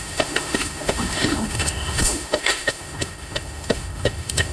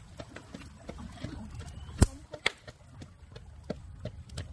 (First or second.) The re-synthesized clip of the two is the first